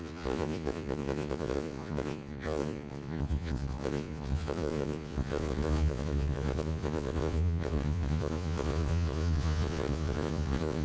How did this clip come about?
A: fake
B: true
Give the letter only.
A